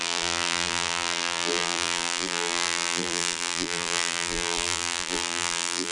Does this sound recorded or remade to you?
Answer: remade